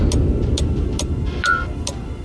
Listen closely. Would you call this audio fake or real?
real